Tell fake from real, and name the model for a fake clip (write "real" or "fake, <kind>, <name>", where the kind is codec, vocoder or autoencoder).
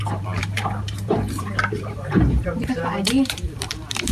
fake, vocoder, BigVGAN v2